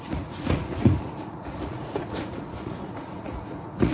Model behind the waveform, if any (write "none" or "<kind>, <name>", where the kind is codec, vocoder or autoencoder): vocoder, Vocos